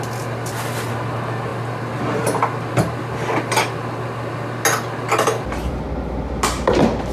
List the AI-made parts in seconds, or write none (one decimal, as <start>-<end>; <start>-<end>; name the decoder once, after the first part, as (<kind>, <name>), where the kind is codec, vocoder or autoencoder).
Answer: none